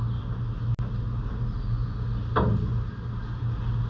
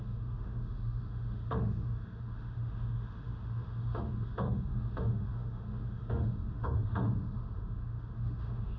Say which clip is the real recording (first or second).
first